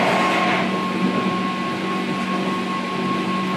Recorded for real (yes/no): yes